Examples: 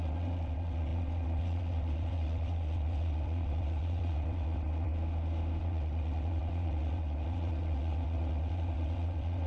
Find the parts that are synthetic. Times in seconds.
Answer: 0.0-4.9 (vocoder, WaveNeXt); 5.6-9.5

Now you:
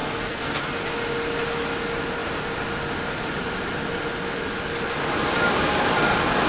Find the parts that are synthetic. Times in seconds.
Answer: 0.0-0.6 (codec, SNAC)

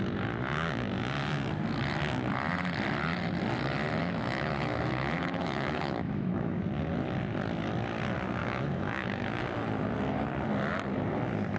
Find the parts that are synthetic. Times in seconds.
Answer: 4.0-6.6 (autoencoder, DAC-VAE); 8.4-9.4

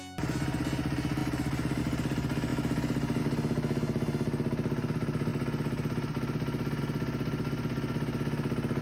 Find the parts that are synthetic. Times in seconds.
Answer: none